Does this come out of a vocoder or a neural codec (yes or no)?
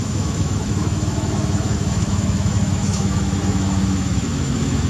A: yes